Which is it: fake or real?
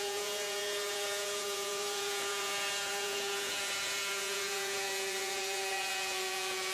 fake